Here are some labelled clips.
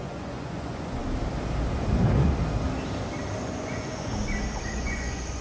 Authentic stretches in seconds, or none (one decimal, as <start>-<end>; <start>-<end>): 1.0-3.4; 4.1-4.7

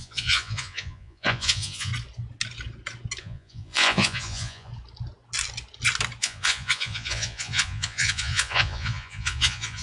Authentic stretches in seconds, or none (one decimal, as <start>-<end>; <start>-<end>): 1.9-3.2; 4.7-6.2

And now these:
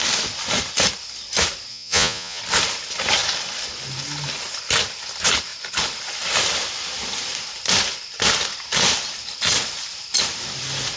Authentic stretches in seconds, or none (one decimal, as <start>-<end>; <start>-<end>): 0.0-1.7; 2.4-11.0